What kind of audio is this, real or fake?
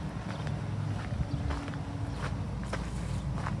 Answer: real